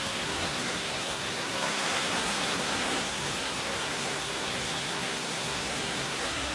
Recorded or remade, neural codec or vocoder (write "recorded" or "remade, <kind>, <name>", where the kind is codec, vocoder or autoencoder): remade, codec, SNAC